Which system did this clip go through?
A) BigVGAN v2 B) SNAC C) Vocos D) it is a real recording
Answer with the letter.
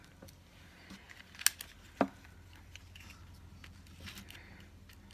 D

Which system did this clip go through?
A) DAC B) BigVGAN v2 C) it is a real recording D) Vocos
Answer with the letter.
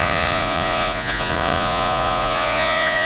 D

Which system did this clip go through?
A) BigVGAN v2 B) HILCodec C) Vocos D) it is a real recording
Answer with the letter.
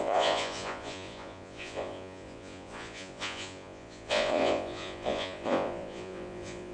C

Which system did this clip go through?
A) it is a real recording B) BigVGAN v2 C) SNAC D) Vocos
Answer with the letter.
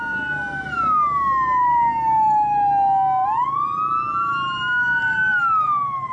A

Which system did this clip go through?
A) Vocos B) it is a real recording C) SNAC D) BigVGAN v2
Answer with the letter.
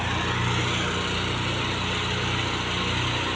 B